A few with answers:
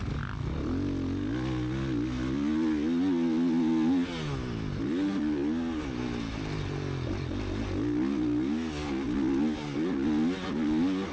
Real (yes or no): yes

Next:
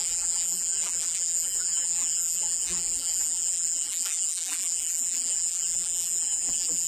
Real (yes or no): no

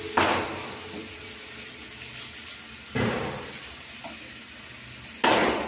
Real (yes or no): yes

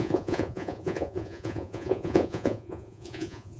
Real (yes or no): no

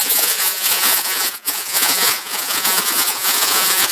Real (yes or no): no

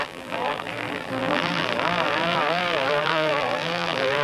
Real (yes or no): no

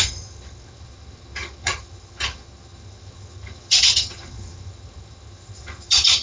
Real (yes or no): no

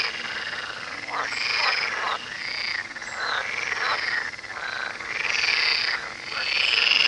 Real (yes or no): yes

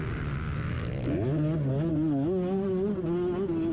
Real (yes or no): yes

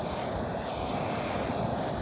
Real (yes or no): yes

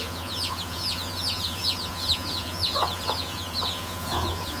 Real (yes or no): no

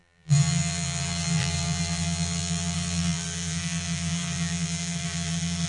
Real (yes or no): no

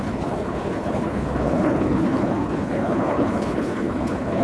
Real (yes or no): no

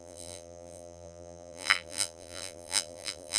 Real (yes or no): no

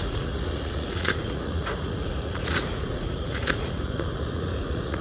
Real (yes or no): no